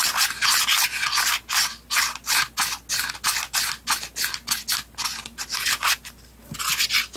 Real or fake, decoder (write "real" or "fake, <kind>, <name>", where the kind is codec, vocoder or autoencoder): real